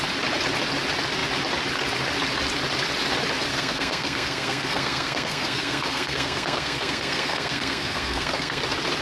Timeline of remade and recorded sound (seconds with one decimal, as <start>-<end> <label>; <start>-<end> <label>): 0.0-3.5 recorded; 3.5-8.6 remade; 8.6-9.0 recorded